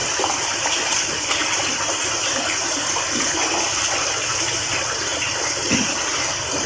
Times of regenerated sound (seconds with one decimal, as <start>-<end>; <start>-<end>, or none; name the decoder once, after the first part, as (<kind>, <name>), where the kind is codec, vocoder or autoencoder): none